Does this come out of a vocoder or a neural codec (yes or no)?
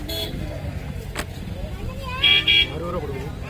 no